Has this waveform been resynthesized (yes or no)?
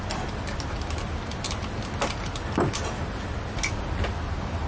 no